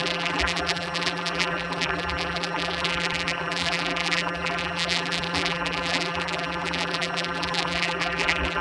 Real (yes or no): no